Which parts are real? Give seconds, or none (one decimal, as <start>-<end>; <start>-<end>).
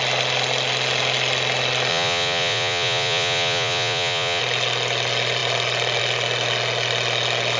0.0-1.9; 4.4-7.6